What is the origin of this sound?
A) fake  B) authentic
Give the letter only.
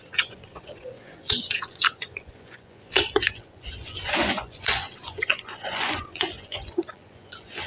A